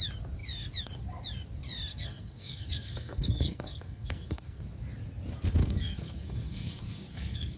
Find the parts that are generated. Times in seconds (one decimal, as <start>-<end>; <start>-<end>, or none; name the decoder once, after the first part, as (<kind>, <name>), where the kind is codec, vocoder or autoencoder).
1.9-4.6 (codec, SNAC); 5.6-7.6